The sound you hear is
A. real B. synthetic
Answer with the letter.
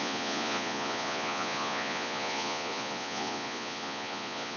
B